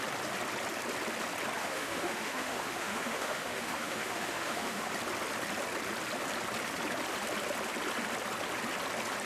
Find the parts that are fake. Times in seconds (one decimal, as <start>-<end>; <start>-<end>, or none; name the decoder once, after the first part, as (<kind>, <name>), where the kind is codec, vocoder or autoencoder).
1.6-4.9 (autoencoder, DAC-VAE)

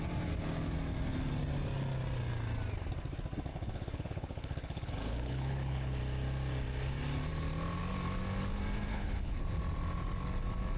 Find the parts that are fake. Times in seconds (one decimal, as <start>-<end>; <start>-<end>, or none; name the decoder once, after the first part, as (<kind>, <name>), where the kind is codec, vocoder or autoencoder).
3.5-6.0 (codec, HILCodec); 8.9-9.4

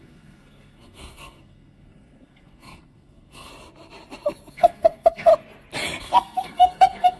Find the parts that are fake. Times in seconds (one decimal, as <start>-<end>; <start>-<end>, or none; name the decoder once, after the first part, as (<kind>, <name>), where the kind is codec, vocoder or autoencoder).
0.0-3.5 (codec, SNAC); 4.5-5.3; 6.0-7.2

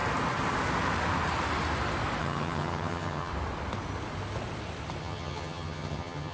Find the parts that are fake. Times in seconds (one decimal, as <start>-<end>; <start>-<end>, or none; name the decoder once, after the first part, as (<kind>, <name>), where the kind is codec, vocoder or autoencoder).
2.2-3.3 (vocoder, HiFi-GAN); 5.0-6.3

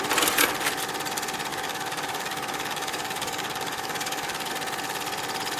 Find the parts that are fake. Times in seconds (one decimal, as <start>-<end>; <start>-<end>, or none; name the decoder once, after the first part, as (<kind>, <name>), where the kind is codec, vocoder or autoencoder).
1.5-4.5 (codec, DAC)